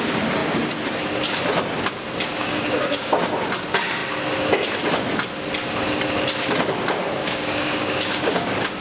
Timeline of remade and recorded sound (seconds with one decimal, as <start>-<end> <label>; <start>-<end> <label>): 0.0-2.3 recorded; 2.3-3.2 remade; 3.2-7.2 recorded; 7.2-8.8 remade

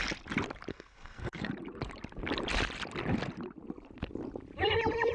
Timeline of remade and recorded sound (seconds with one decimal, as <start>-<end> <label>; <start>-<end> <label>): 0.0-0.7 recorded; 0.7-1.5 remade; 1.5-5.1 recorded

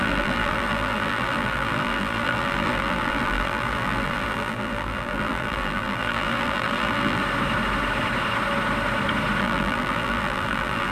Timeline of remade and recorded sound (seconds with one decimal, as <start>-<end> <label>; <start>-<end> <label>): 0.0-7.2 remade; 7.2-9.4 recorded; 9.4-10.9 remade

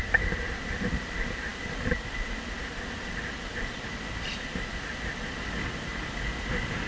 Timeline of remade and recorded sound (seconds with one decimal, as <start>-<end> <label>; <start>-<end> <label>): 0.0-6.9 recorded

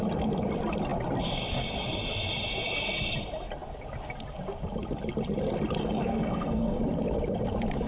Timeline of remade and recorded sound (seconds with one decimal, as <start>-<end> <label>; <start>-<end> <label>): 0.0-5.8 recorded; 5.8-6.8 remade; 6.8-7.9 recorded

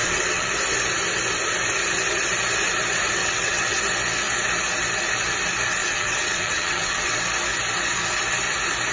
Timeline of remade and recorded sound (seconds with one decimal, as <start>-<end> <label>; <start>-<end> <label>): 0.0-0.5 remade; 0.5-3.2 recorded; 3.2-3.8 remade; 3.8-5.8 recorded; 5.8-7.2 remade; 7.2-8.9 recorded

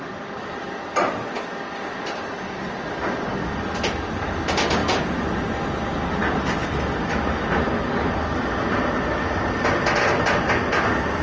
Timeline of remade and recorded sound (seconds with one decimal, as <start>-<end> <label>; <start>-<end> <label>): 0.0-11.2 recorded

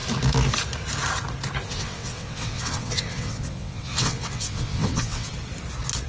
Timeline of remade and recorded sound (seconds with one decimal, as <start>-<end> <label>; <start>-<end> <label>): 0.0-1.7 recorded; 1.7-5.3 remade; 5.3-6.1 recorded